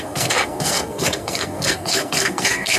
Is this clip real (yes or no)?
no